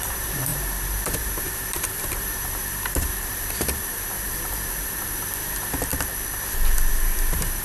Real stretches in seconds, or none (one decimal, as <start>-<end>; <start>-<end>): 5.9-6.9